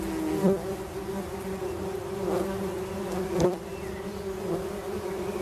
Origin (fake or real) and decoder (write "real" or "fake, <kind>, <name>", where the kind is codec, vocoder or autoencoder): real